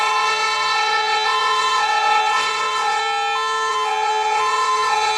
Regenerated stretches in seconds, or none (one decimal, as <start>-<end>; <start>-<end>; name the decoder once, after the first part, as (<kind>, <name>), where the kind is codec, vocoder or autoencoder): 0.0-3.0 (vocoder, WaveNeXt); 3.7-5.2